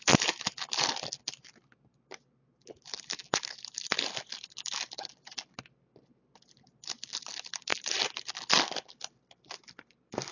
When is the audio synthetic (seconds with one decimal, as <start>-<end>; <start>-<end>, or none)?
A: none